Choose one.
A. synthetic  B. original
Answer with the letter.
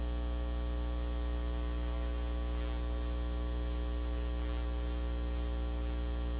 B